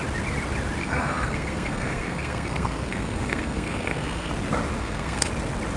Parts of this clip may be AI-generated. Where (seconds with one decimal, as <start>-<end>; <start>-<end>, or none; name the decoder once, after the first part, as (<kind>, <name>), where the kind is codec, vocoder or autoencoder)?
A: 0.8-4.3 (codec, SNAC); 4.8-5.3